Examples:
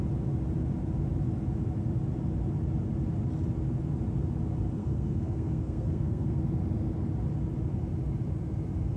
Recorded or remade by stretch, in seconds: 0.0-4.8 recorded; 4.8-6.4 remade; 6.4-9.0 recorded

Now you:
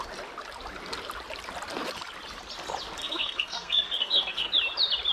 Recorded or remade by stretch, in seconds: 0.0-3.0 recorded; 3.0-4.5 remade; 4.5-5.1 recorded